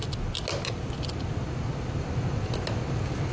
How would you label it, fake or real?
real